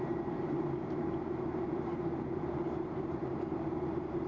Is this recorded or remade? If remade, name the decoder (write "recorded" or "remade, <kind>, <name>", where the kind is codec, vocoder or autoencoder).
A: remade, vocoder, BigVGAN v2